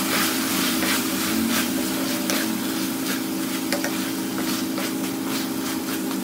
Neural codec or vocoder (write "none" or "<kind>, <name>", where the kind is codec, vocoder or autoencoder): none